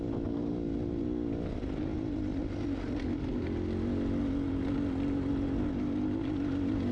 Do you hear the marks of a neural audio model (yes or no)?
no